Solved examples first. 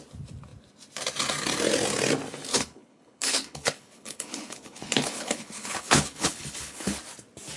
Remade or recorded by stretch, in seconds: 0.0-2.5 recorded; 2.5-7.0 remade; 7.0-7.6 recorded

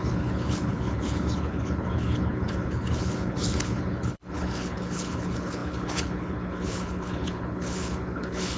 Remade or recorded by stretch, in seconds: 0.0-8.6 remade

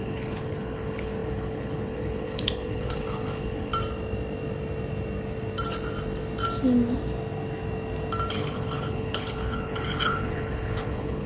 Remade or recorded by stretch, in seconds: 0.0-3.7 remade; 3.7-8.3 recorded; 8.3-11.3 remade

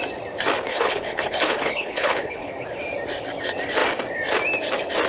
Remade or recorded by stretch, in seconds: 0.0-0.7 recorded; 0.7-2.5 remade; 2.5-5.1 recorded